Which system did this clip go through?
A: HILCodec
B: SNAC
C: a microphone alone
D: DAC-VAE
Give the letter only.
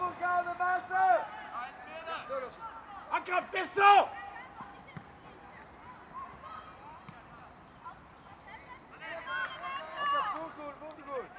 C